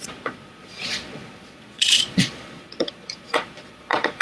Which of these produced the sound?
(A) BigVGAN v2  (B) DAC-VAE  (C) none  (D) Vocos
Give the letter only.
D